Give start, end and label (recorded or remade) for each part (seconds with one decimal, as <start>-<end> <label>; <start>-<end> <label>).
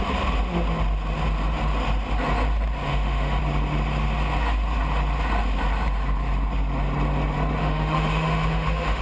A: 0.0-2.9 recorded; 2.9-3.4 remade; 3.4-7.6 recorded; 7.6-9.0 remade